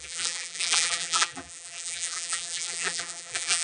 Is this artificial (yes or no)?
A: yes